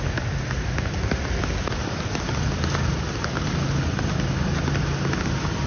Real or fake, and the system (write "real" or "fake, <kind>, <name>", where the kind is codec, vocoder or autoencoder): real